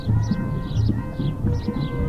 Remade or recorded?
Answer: recorded